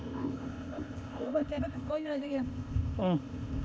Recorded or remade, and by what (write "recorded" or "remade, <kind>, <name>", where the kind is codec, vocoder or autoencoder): remade, codec, ZipCodec